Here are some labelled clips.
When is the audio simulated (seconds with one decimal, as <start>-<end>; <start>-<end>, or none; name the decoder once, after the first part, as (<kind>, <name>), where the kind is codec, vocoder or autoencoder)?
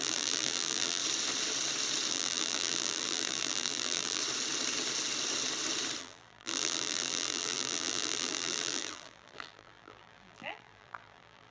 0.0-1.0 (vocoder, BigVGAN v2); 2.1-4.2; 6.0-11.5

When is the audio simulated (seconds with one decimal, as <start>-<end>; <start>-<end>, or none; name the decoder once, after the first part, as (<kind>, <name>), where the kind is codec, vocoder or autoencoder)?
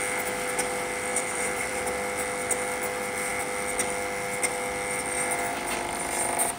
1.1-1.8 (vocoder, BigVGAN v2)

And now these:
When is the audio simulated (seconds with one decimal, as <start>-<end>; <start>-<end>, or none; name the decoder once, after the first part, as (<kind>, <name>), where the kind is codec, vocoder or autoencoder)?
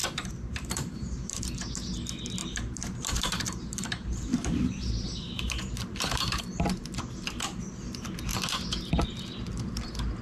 0.0-1.4 (vocoder, BigVGAN v2); 2.4-6.4; 8.3-8.9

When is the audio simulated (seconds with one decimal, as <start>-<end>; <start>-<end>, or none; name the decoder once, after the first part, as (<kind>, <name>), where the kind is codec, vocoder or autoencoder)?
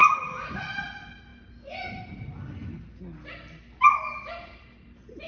0.0-0.8 (vocoder, BigVGAN v2)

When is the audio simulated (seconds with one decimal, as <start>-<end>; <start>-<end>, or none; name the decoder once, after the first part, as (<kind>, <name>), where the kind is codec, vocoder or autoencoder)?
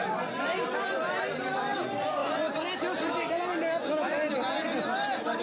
none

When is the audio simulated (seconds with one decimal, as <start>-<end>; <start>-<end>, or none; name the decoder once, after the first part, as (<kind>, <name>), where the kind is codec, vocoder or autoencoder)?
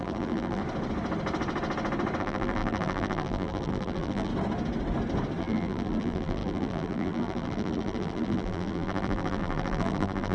0.0-0.6 (vocoder, BigVGAN v2); 2.2-4.3; 5.4-10.3